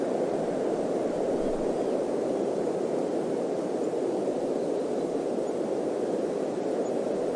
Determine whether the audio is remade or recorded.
recorded